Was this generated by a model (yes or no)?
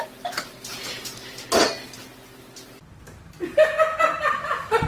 no